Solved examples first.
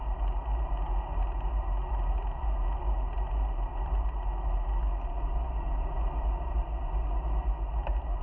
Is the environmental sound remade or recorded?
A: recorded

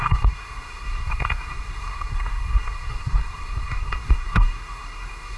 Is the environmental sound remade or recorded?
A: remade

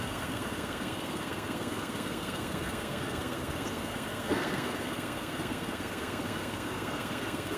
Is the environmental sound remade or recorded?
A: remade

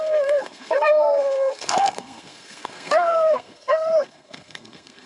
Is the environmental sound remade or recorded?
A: remade